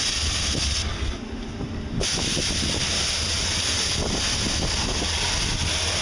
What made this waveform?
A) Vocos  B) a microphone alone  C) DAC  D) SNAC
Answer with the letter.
B